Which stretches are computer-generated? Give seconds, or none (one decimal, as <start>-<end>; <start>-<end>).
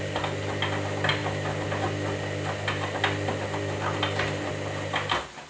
none